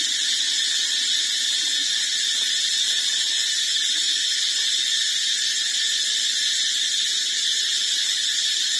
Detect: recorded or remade recorded